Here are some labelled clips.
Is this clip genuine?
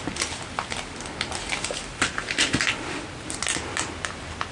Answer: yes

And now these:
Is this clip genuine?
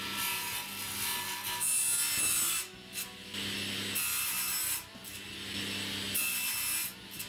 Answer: yes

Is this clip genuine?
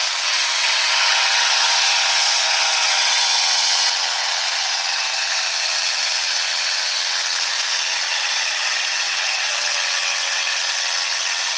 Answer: no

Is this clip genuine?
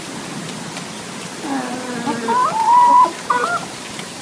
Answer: yes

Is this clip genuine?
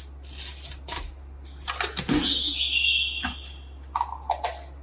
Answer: yes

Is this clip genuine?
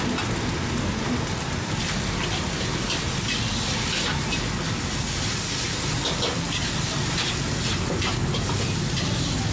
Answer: yes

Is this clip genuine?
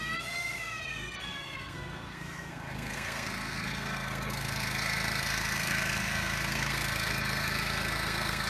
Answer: no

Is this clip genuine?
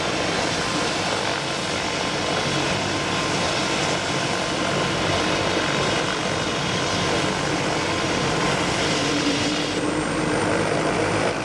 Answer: yes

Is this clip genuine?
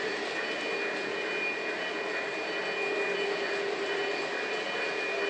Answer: yes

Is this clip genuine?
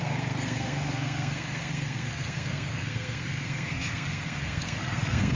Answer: no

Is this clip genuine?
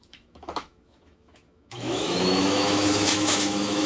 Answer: no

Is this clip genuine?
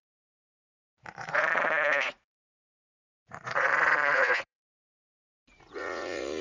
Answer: no